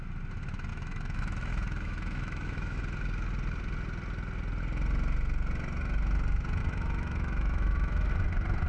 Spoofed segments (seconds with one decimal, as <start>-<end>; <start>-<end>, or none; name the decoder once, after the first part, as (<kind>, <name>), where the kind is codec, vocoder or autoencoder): 0.7-2.8 (autoencoder, DAC-VAE); 6.6-8.1